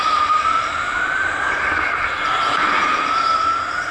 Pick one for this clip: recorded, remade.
recorded